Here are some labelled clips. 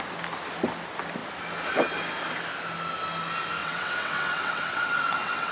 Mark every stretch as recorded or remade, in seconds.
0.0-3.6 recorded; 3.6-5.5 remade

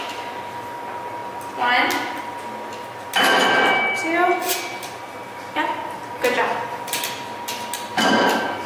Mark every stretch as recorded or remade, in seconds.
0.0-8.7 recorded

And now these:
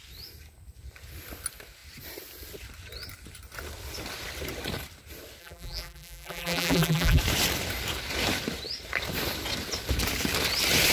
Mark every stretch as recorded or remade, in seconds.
0.0-5.4 recorded; 5.4-7.2 remade; 7.2-10.9 recorded

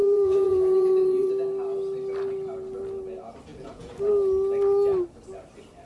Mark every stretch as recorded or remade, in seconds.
0.0-1.3 remade; 1.3-3.5 recorded; 3.5-4.1 remade; 4.1-5.8 recorded

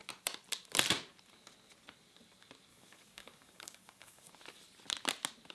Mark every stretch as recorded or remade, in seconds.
0.0-2.7 recorded; 2.7-4.3 remade; 4.3-5.5 recorded